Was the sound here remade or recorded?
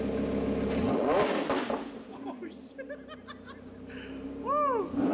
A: recorded